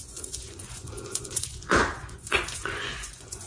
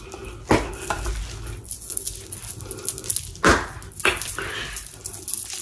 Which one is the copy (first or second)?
first